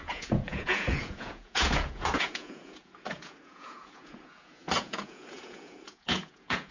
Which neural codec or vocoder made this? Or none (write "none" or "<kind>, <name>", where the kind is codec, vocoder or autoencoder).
vocoder, Vocos